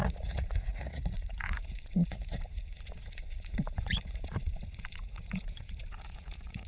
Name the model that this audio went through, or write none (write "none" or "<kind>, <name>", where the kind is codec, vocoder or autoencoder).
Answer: vocoder, Vocos